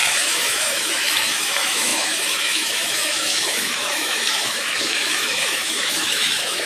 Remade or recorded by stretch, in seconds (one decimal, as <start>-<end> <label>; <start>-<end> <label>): 0.0-6.7 remade